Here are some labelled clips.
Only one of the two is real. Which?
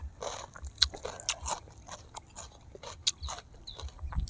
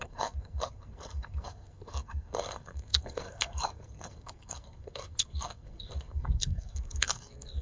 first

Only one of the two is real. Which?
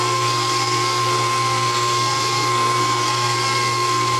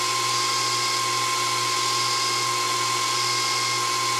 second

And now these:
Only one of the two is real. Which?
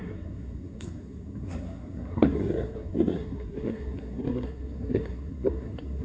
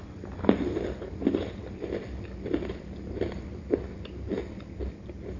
second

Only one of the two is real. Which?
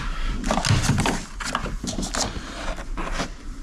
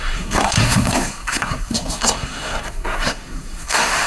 first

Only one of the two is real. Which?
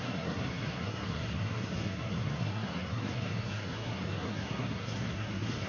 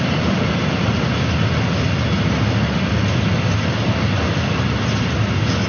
second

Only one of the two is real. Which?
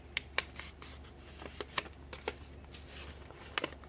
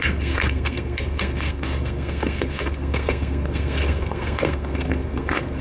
first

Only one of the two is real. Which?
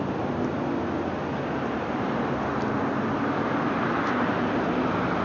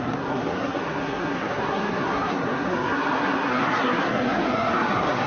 first